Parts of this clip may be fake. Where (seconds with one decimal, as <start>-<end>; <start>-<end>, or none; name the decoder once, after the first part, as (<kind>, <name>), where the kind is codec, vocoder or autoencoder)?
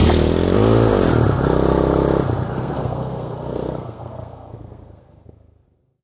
2.5-6.0 (codec, SNAC)